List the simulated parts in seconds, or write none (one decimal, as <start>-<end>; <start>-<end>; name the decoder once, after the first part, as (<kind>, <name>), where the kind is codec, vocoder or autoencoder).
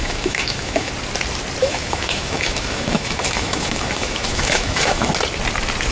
0.0-0.9 (autoencoder, DAC-VAE); 1.6-5.1